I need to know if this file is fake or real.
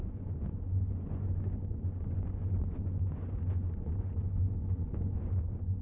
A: fake